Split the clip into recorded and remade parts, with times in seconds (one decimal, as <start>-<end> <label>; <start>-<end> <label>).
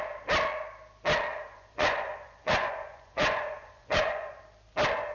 0.0-1.3 recorded; 1.3-4.4 remade; 4.4-5.1 recorded